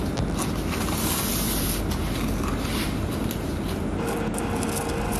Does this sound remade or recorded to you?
recorded